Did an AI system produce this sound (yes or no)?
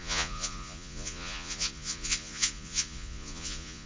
yes